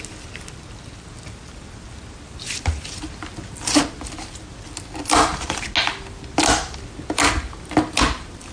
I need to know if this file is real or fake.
real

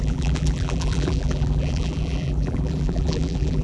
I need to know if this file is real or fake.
fake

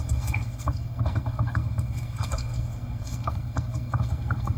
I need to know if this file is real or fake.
fake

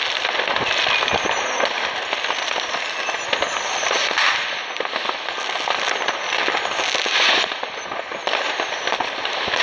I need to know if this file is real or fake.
real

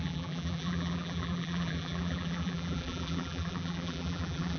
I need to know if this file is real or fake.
fake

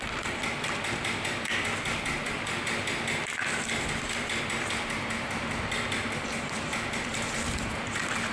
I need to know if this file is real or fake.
real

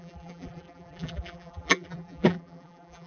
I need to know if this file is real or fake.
fake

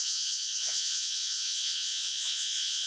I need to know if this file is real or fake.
fake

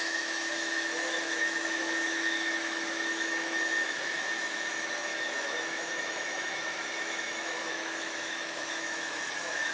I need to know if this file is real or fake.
fake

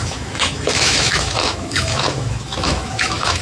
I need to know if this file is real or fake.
fake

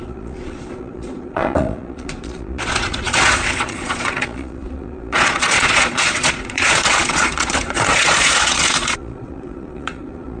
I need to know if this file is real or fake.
fake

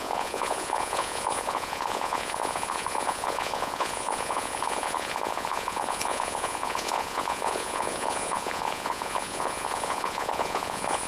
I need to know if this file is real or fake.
fake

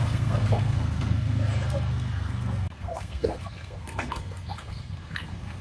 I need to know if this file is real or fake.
fake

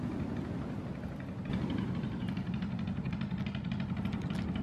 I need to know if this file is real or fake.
real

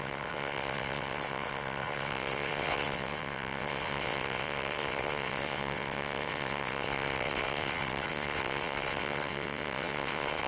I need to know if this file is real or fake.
fake